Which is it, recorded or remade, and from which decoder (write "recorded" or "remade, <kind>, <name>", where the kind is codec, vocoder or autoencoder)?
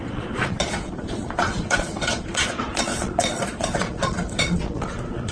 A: remade, vocoder, Vocos